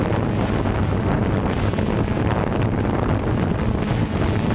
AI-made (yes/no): no